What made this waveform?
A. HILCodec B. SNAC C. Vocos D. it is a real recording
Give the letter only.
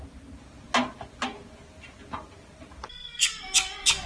D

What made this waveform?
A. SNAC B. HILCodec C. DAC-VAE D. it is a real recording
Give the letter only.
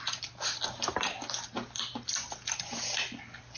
D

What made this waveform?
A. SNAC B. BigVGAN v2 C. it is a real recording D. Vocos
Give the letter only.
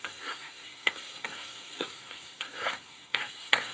A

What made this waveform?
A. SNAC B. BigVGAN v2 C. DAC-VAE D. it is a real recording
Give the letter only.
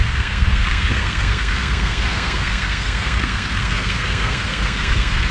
A